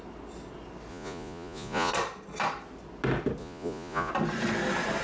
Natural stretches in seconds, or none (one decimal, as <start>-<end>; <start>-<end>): 0.0-0.9; 1.9-3.4; 4.1-5.0